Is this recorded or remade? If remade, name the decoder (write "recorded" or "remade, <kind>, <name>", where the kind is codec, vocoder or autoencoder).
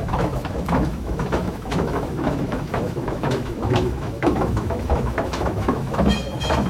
remade, autoencoder, DAC-VAE